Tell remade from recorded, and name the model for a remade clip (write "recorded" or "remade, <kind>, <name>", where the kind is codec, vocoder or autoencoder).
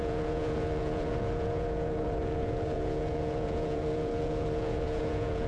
remade, vocoder, Vocos